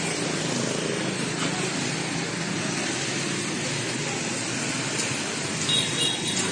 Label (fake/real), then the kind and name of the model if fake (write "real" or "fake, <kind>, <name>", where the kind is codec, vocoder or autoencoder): real